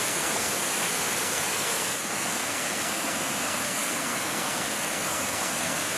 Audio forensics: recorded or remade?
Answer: remade